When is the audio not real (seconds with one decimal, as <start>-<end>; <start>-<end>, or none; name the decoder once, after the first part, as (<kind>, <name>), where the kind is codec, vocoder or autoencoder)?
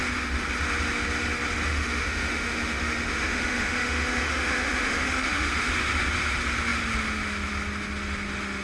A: 1.7-5.7 (autoencoder, DAC-VAE)